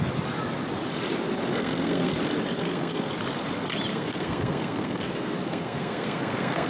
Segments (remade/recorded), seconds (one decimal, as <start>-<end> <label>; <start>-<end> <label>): 0.0-1.5 recorded; 1.5-2.1 remade; 2.1-2.6 recorded; 2.6-3.1 remade; 3.1-3.9 recorded; 3.9-6.7 remade